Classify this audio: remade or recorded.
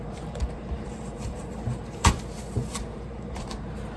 remade